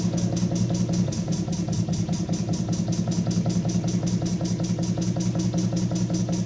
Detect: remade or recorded recorded